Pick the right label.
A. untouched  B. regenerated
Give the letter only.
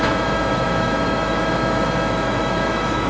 B